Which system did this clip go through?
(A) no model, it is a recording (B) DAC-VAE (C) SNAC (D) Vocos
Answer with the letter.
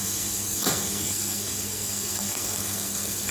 C